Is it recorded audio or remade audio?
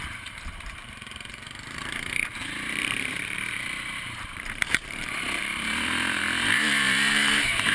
remade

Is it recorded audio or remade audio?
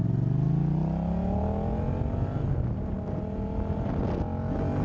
recorded